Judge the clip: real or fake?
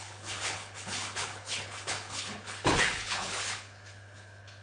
fake